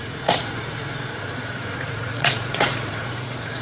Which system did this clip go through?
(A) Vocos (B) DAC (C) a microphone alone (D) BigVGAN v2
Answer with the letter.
A